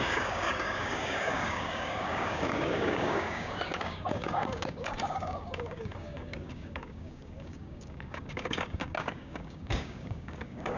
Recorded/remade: remade